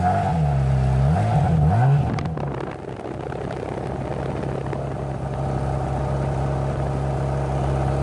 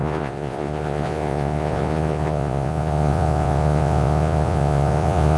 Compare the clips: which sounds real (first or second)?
first